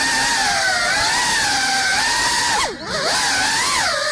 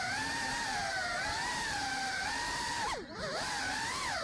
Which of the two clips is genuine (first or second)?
first